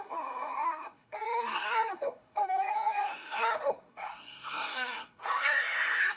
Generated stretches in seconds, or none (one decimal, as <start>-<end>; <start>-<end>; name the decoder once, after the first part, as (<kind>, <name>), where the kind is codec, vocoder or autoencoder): 0.0-6.2 (codec, SNAC)